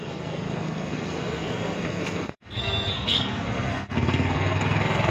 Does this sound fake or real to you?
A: fake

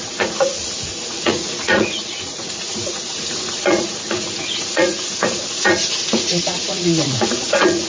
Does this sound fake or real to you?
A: fake